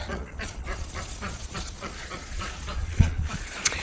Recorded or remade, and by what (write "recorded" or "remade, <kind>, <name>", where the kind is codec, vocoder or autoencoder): remade, vocoder, Vocos